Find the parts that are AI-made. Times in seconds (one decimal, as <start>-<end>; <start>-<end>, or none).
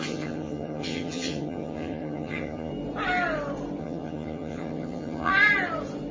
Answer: 0.0-2.7; 3.8-5.3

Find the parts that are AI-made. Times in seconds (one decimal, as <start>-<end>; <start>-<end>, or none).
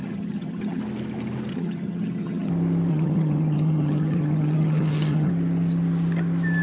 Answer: 0.0-0.8; 1.5-2.5; 2.9-5.3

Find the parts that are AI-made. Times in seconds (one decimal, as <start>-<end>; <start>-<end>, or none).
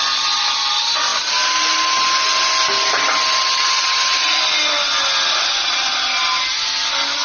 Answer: none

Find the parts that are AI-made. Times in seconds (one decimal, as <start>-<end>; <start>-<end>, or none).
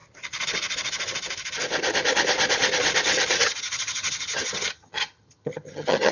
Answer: 3.4-6.1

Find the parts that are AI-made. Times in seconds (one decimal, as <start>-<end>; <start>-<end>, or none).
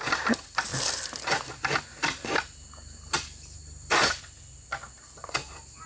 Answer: none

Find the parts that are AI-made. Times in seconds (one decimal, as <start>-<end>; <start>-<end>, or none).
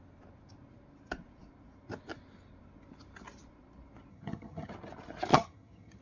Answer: 4.1-4.7; 5.3-6.0